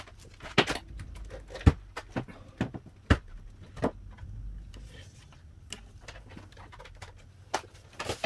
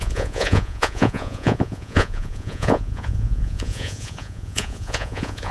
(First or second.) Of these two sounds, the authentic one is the first